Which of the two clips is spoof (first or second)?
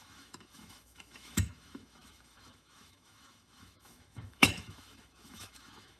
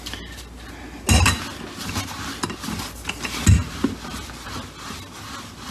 first